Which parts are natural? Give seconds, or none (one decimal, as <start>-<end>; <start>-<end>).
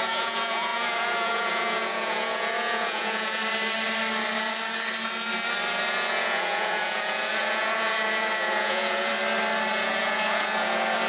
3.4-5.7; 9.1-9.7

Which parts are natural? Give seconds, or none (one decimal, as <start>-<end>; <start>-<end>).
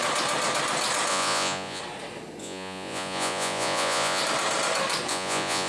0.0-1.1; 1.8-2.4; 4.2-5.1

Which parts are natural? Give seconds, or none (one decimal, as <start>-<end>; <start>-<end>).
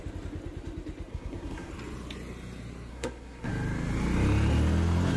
0.0-1.1; 1.7-2.9; 3.5-5.2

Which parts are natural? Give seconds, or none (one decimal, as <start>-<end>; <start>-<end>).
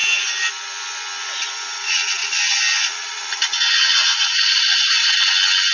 0.0-2.2; 4.6-5.7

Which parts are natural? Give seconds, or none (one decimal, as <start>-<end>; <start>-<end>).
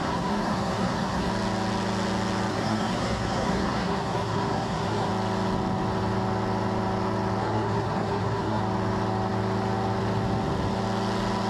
1.3-2.5; 5.1-7.4; 8.6-11.5